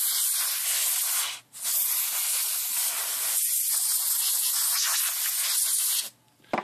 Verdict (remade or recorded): recorded